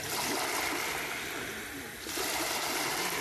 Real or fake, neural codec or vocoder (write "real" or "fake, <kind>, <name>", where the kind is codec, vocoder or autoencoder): real